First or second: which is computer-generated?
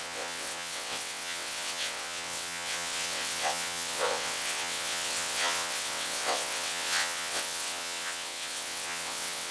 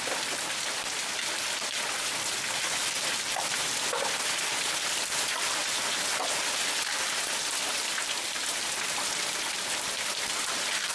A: first